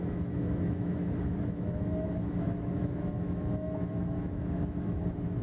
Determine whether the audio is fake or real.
fake